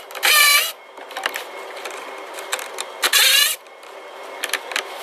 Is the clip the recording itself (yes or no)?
yes